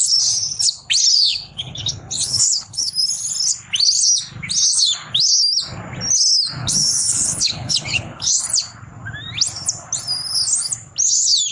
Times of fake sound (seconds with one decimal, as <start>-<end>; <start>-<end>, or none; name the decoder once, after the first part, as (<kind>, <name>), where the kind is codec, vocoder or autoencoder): 1.3-2.9 (codec, HILCodec); 6.6-8.3